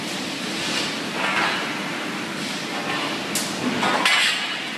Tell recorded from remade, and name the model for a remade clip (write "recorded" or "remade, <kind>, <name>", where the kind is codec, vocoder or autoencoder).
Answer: remade, vocoder, BigVGAN v2